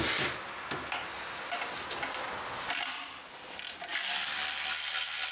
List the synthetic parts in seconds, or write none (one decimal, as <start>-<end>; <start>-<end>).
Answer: none